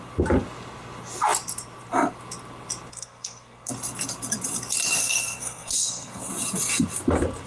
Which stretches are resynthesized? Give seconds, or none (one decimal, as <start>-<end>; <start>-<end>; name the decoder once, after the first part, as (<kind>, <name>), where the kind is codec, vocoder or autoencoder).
2.9-3.7 (codec, SNAC); 5.0-6.3